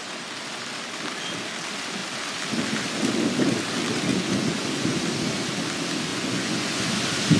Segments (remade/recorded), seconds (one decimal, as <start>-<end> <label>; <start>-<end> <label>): 0.0-4.1 recorded; 4.1-5.0 remade; 5.0-6.1 recorded; 6.1-6.9 remade; 6.9-7.4 recorded